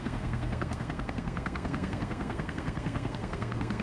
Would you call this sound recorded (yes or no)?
no